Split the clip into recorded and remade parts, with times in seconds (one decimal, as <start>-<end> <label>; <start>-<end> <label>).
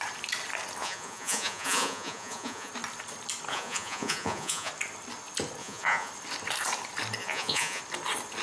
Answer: 0.0-0.8 recorded; 0.8-2.7 remade; 2.7-3.5 recorded; 3.5-4.7 remade; 4.7-5.6 recorded; 5.6-6.1 remade; 6.1-7.2 recorded; 7.2-7.8 remade; 7.8-8.4 recorded